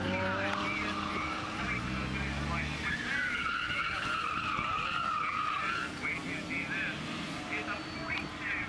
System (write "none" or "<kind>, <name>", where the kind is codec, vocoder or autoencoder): none